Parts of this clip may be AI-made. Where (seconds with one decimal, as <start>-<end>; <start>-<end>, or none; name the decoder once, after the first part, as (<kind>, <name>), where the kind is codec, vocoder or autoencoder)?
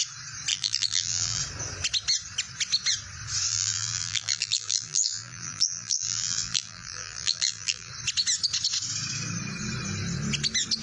0.5-1.4 (vocoder, BigVGAN v2); 3.5-7.9